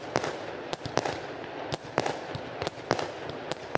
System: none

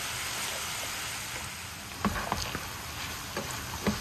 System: none